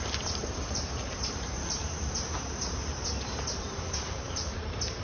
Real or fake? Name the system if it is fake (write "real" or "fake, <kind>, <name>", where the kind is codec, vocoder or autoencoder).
fake, vocoder, BigVGAN v2